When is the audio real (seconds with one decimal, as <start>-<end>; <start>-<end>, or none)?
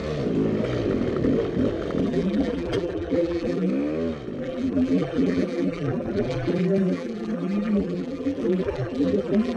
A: 0.0-2.0; 3.7-4.4